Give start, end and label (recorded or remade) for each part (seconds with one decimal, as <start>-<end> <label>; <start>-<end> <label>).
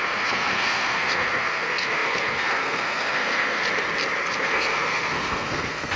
0.0-3.6 remade; 3.6-4.3 recorded; 4.3-6.0 remade